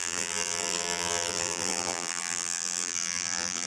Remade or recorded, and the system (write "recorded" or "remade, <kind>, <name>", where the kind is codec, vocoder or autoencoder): remade, vocoder, BigVGAN v2